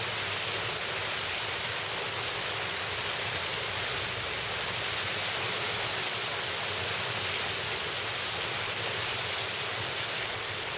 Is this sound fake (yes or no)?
no